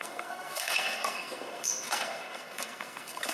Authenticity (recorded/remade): remade